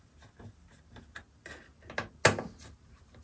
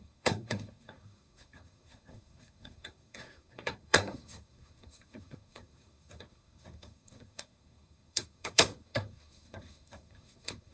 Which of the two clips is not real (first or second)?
second